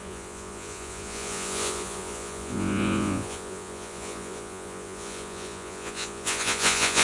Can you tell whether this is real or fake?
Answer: fake